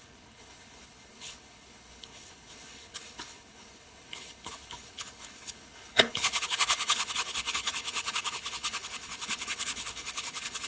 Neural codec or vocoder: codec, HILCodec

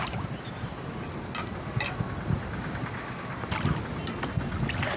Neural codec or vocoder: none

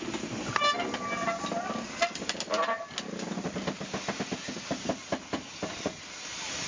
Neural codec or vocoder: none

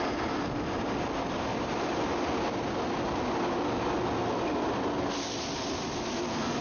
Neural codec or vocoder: none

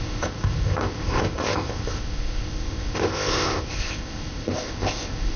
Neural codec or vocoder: codec, ZipCodec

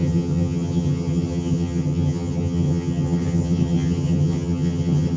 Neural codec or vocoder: vocoder, HiFi-GAN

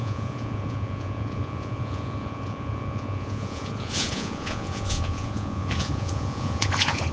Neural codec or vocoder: vocoder, Vocos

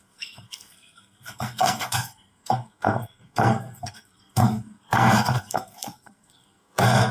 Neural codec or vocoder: codec, SNAC